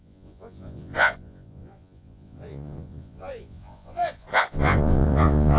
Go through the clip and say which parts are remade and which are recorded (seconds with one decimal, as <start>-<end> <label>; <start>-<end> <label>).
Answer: 0.0-5.6 remade